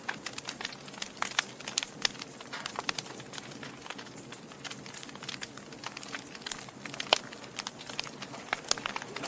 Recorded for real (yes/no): yes